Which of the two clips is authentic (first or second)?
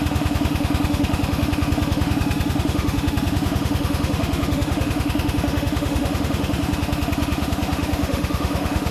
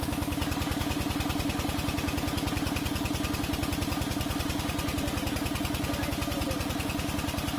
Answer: second